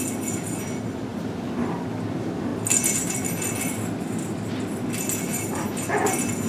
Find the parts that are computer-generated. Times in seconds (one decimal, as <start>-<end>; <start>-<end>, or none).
none